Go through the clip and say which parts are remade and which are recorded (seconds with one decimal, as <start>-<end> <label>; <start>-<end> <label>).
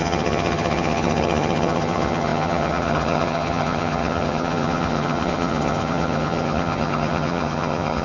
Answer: 0.0-8.0 remade